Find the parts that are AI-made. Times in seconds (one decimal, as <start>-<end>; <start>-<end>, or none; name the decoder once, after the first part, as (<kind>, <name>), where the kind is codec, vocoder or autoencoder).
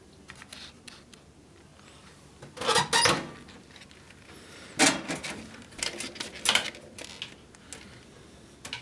none